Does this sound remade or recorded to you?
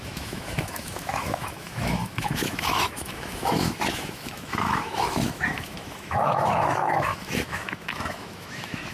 remade